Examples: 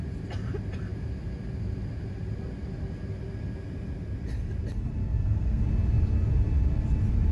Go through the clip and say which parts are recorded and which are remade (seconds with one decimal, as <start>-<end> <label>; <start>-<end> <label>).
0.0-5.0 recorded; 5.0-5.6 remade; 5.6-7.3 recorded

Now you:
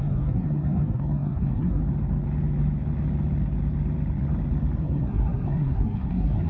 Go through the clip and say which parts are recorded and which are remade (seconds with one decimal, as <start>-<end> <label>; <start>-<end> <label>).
0.0-1.8 remade; 1.8-4.8 recorded; 4.8-6.5 remade

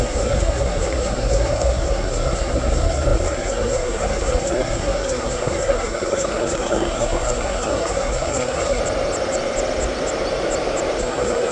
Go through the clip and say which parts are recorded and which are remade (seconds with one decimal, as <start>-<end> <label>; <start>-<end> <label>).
0.0-8.8 remade; 8.8-11.0 recorded; 11.0-11.5 remade

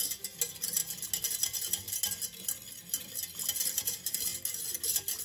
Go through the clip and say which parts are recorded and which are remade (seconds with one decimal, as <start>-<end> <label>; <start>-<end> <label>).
0.0-5.2 recorded

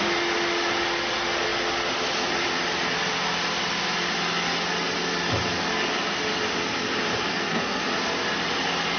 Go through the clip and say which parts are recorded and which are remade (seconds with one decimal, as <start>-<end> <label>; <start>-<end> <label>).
0.0-7.3 recorded; 7.3-7.8 remade; 7.8-9.0 recorded

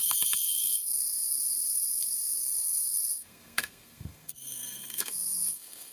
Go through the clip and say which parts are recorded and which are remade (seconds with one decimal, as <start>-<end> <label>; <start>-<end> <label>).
0.0-5.9 remade

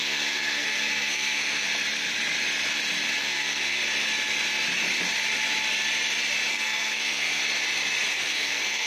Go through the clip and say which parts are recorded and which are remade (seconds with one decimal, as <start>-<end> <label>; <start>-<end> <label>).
0.0-1.7 remade; 1.7-3.2 recorded; 3.2-3.8 remade; 3.8-6.5 recorded; 6.5-7.4 remade; 7.4-8.1 recorded; 8.1-8.9 remade